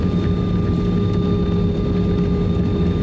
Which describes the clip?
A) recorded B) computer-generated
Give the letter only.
A